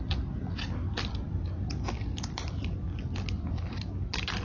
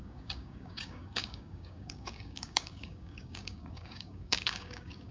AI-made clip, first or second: second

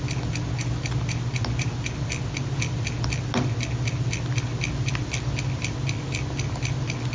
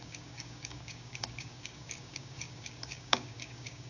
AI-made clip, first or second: second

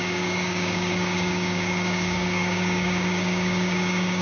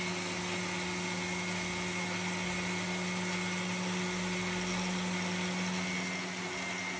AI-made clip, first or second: first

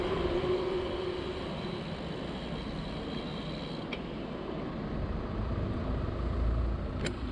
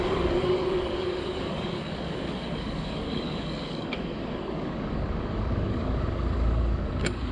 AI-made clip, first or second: second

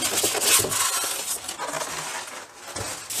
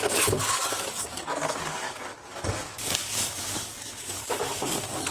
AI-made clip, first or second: second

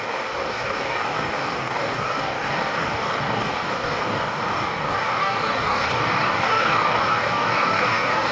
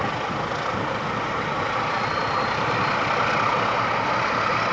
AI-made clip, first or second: first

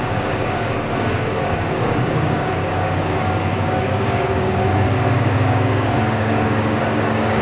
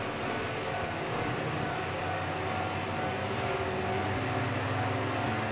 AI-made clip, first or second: first